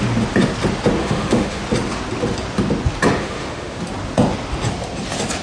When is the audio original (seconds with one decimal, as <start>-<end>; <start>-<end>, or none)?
0.0-1.0; 1.6-3.2; 3.8-5.4